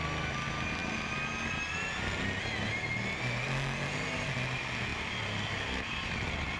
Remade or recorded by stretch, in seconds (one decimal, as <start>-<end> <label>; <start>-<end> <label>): 0.0-4.9 recorded; 4.9-6.6 remade